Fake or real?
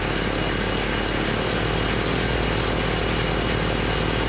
real